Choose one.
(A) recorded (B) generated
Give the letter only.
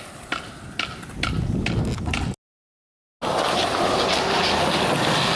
A